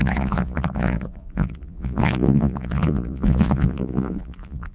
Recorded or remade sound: remade